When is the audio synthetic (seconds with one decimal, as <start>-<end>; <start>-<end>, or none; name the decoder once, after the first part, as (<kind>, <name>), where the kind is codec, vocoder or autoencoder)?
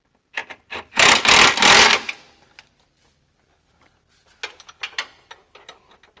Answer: none